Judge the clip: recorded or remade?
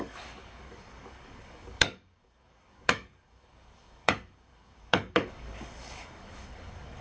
remade